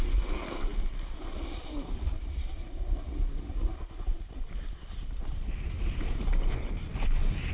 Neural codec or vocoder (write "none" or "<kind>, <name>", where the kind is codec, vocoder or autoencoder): none